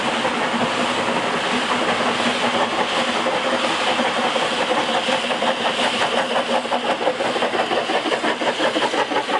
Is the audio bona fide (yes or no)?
yes